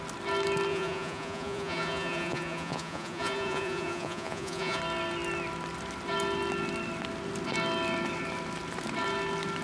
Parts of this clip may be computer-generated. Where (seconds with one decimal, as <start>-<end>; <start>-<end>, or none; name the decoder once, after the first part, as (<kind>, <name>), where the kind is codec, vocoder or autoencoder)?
0.7-4.8 (vocoder, Vocos)